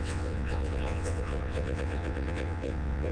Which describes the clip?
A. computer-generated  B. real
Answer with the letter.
A